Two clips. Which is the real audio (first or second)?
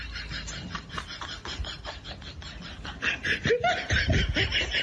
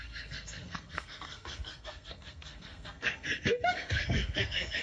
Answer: first